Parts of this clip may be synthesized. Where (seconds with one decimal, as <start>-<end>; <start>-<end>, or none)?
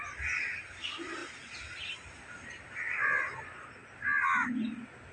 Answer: none